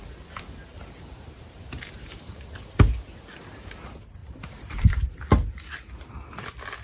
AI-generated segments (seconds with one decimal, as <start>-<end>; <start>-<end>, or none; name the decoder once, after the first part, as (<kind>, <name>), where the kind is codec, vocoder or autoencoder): 0.7-2.9 (vocoder, BigVGAN v2); 4.2-5.2